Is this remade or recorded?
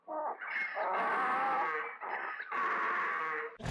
recorded